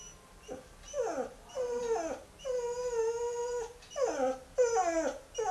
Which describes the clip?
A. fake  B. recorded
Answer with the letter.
B